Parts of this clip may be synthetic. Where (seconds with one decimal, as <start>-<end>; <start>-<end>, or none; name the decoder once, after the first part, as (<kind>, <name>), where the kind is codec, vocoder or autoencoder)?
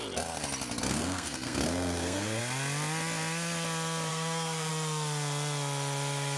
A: 0.9-2.4 (codec, SNAC); 4.1-4.7